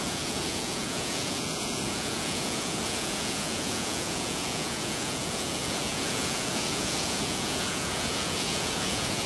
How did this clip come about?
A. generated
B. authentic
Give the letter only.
A